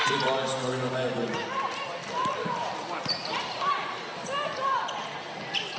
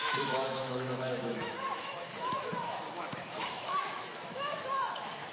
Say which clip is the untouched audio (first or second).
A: first